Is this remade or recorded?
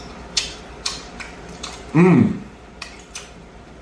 remade